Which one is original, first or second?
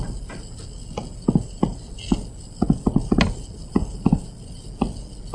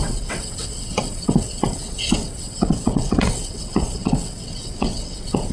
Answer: first